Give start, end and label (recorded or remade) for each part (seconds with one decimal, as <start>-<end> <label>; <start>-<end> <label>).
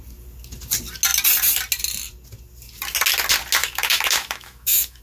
0.0-3.6 recorded; 3.6-5.0 remade